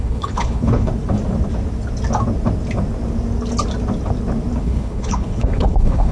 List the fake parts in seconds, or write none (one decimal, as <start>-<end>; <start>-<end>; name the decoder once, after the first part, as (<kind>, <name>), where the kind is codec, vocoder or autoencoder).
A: 0.0-0.9 (codec, HILCodec); 4.6-6.1